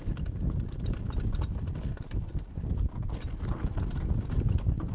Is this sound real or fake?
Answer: real